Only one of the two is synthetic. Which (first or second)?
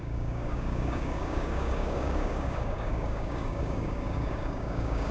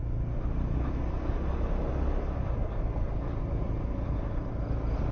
first